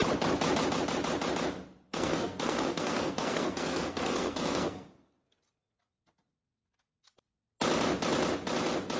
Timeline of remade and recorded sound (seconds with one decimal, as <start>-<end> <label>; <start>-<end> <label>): 0.0-1.9 recorded; 1.9-5.2 remade; 5.2-9.0 recorded